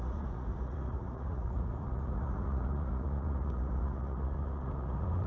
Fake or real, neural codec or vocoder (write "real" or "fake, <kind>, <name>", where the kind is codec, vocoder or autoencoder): fake, vocoder, Vocos